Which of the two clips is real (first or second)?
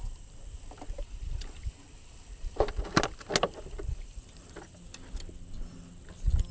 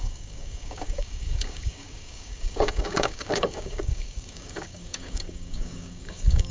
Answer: first